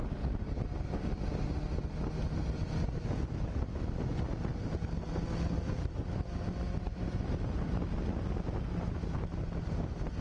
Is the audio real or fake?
real